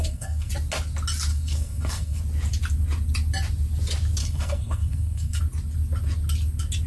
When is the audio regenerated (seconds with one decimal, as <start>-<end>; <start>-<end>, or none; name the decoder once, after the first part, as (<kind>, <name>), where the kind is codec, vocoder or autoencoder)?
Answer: 0.0-0.5 (codec, SNAC); 1.3-2.2; 4.2-5.4

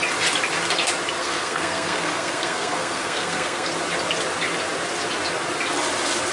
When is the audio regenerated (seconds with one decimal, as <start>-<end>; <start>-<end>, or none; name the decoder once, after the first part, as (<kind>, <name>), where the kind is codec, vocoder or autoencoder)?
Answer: 1.2-3.7 (codec, SNAC)

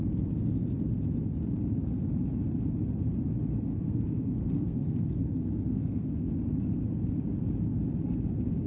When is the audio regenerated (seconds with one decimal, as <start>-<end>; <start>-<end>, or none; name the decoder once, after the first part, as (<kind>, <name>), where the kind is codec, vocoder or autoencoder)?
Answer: 3.7-6.3 (codec, SNAC)

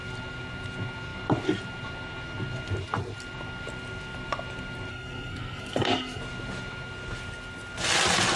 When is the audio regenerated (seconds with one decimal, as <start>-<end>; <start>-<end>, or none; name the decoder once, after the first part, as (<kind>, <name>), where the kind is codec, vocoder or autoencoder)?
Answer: 4.9-6.2 (codec, SNAC)

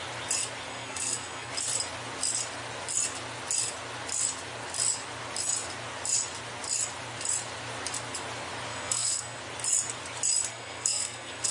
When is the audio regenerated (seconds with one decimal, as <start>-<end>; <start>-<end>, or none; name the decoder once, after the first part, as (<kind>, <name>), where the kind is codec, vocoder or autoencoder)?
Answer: 0.7-1.5 (codec, SNAC); 8.7-9.4; 10.5-11.5